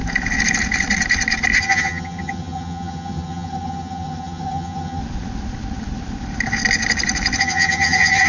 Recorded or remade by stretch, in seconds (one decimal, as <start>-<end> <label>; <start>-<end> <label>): 0.0-1.6 recorded; 1.6-5.0 remade; 5.0-7.4 recorded; 7.4-8.3 remade